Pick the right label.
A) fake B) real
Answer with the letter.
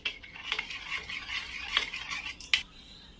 B